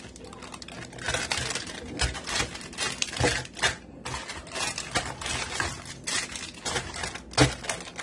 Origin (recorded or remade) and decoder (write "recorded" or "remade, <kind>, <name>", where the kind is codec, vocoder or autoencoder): recorded